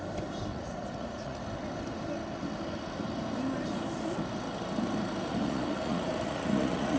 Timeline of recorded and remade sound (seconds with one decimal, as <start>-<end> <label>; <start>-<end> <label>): 0.0-0.5 recorded; 0.5-1.4 remade; 1.4-5.2 recorded; 5.2-7.0 remade